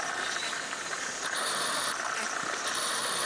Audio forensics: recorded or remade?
remade